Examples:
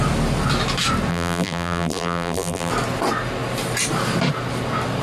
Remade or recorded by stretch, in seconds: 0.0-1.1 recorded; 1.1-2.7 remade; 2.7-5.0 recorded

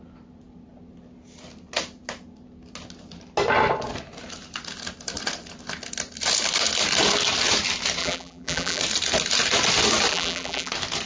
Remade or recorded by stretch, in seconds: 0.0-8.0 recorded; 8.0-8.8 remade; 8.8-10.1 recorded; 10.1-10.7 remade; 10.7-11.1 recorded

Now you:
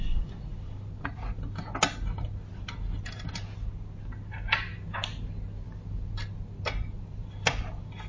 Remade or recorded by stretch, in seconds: 0.0-8.1 recorded

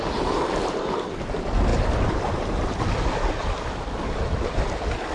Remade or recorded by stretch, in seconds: 0.0-1.7 recorded; 1.7-2.8 remade; 2.8-5.1 recorded